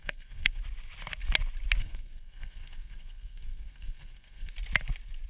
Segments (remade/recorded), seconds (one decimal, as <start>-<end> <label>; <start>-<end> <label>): 0.0-0.6 remade; 0.6-1.8 recorded; 1.8-4.5 remade; 4.5-5.3 recorded